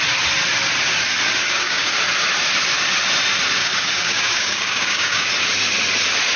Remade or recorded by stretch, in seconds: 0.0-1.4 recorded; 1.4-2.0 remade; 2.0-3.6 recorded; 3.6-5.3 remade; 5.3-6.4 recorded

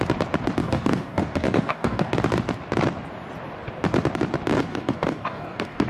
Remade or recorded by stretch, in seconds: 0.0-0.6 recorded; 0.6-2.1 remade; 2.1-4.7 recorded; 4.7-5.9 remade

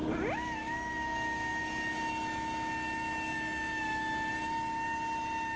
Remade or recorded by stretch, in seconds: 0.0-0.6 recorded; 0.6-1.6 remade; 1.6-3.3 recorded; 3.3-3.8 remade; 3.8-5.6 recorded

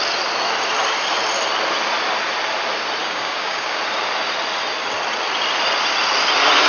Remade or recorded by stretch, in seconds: 0.0-3.0 recorded; 3.0-3.8 remade; 3.8-6.7 recorded

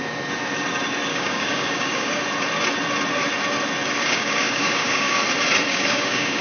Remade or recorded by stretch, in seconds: 0.0-1.1 recorded; 1.1-2.2 remade; 2.2-4.0 recorded; 4.0-5.2 remade; 5.2-5.7 recorded; 5.7-6.4 remade